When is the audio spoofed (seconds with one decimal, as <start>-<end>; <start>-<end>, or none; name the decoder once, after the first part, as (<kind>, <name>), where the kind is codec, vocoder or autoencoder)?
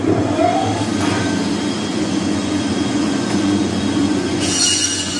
1.9-5.2 (vocoder, Vocos)